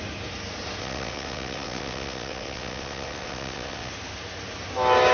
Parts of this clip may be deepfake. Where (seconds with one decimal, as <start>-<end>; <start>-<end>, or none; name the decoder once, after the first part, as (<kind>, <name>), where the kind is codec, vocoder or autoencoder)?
0.8-3.9 (vocoder, WaveNeXt)